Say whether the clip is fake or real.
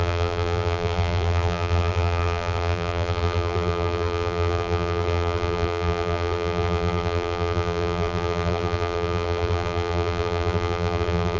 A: fake